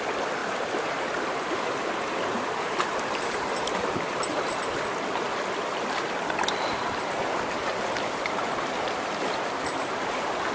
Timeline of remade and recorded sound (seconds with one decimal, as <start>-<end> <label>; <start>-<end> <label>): 0.0-0.4 recorded; 0.4-4.5 remade; 4.5-10.5 recorded